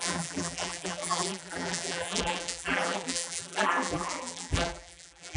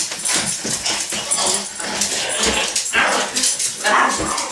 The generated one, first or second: first